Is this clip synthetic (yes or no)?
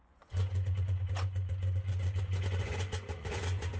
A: yes